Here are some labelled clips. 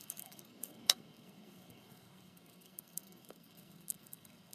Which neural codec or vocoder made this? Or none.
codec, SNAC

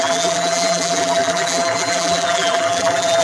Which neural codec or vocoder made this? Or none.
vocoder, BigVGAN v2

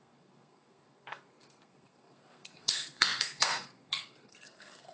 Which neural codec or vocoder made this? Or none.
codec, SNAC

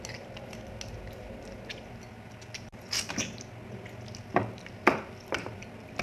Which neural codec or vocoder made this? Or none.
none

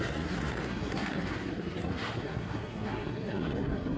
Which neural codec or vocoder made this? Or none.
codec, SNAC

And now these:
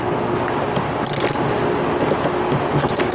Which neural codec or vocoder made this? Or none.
none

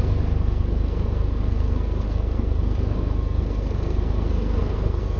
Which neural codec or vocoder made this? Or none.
codec, SNAC